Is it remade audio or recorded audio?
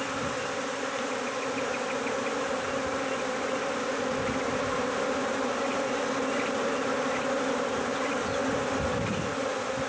recorded